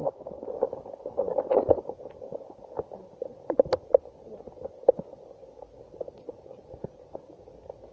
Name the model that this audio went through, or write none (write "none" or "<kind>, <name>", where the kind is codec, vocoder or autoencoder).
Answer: none